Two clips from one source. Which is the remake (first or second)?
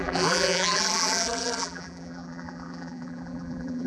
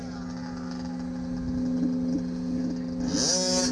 first